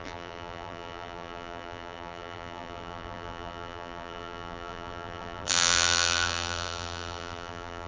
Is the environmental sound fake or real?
fake